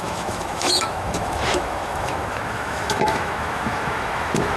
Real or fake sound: fake